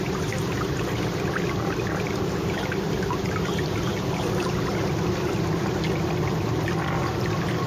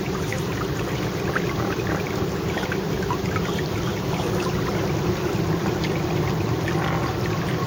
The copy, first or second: second